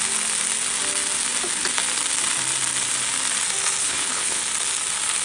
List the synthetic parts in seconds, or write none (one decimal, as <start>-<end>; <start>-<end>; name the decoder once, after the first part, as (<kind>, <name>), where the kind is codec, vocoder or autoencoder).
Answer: 3.8-4.4 (codec, HILCodec)